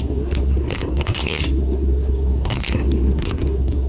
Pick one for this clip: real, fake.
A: fake